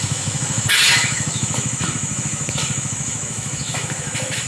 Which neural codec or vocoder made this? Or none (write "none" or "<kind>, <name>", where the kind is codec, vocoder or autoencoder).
autoencoder, DAC-VAE